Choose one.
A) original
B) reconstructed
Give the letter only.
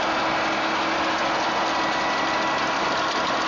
A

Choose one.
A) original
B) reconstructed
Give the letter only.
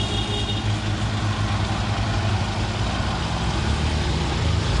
A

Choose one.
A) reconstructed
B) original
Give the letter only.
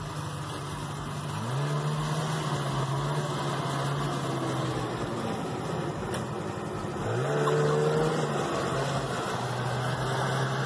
B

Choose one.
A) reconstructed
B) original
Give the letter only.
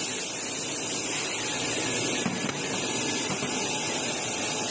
B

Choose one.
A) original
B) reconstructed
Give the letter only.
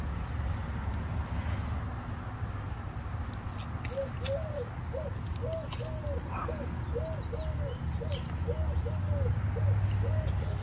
A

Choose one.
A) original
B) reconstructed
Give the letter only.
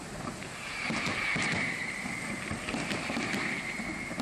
A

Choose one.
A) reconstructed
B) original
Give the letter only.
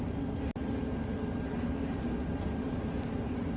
B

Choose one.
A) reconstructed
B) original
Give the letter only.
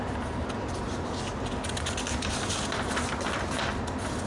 B